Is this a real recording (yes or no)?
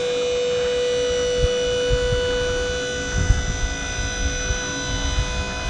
yes